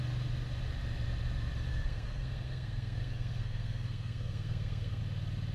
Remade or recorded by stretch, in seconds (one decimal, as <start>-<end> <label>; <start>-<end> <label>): 0.0-1.7 recorded; 1.7-5.0 remade; 5.0-5.5 recorded